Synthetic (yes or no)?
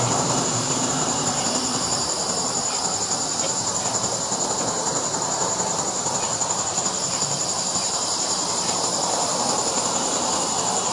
yes